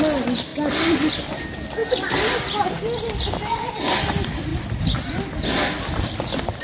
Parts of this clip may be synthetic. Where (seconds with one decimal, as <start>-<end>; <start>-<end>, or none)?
none